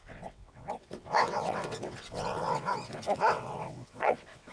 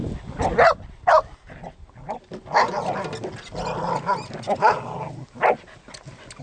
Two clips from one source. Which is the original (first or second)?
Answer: second